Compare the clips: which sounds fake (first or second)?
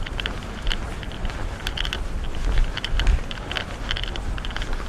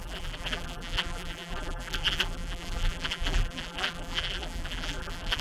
second